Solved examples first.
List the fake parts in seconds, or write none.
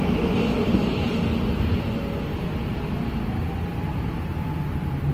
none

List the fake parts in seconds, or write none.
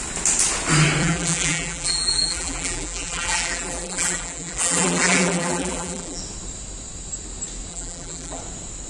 1.0-6.2 (vocoder, BigVGAN v2); 7.7-8.4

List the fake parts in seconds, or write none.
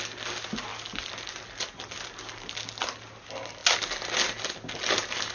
none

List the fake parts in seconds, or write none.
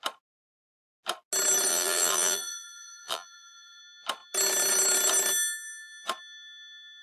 1.7-3.8 (vocoder, BigVGAN v2)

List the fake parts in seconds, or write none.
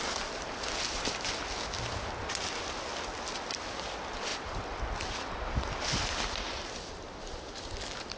2.9-3.9 (vocoder, BigVGAN v2); 4.3-6.6